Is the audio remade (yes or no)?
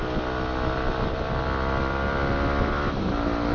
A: no